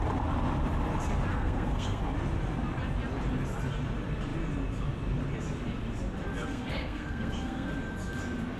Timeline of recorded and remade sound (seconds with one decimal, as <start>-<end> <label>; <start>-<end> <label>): 0.0-1.3 recorded; 1.3-2.0 remade; 2.0-6.5 recorded; 6.5-7.7 remade; 7.7-8.6 recorded